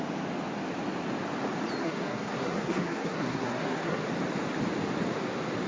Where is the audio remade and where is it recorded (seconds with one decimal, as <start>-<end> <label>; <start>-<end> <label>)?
0.0-1.8 recorded; 1.8-4.0 remade; 4.0-5.7 recorded